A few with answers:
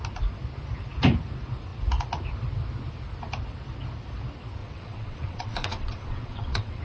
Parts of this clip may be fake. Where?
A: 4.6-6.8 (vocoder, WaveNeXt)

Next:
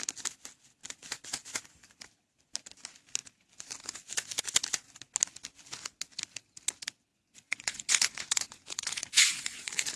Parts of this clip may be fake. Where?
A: 7.1-10.0 (vocoder, Vocos)

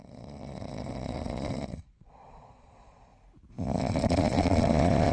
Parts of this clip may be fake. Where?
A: 0.0-3.1 (vocoder, Vocos); 3.8-5.1

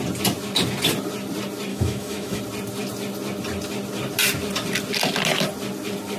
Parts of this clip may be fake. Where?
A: 1.7-2.4 (autoencoder, DAC-VAE)